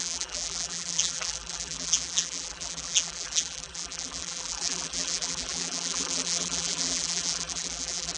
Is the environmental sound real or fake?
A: fake